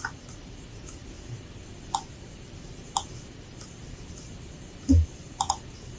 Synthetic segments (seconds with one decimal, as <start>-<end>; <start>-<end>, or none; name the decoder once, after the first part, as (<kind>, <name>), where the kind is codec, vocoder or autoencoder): none